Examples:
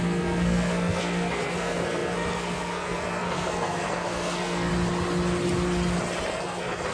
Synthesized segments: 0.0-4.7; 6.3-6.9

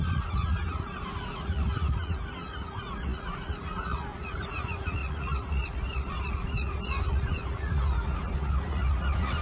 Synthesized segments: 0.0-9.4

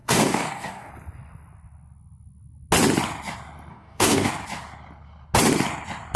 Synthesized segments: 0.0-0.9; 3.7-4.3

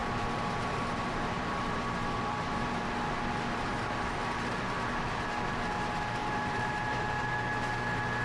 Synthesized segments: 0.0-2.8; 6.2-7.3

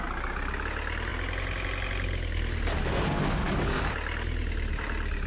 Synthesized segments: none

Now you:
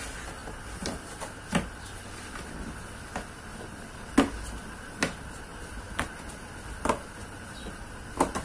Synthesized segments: none

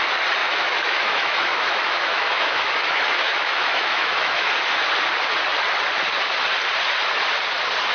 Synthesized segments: 0.4-4.5

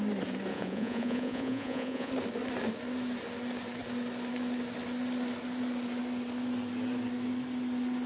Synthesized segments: 0.5-2.1